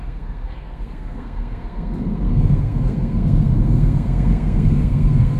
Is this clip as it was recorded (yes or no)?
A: no